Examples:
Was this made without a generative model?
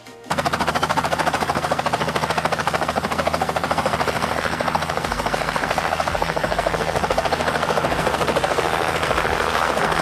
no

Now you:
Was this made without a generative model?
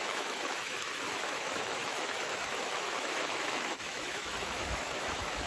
no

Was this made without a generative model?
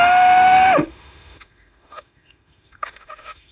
no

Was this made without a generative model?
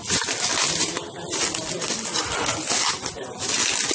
yes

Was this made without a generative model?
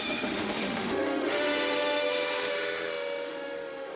no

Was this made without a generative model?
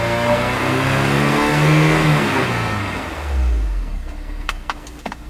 no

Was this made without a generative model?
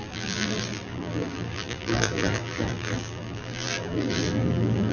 no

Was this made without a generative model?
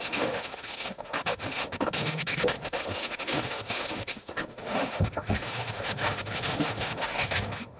no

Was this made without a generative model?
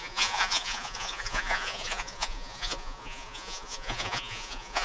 no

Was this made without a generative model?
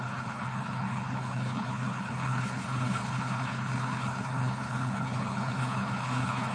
no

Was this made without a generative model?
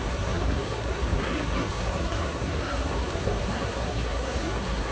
no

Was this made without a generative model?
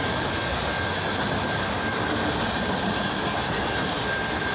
yes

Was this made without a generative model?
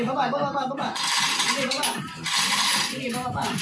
no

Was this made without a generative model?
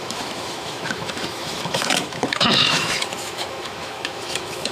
no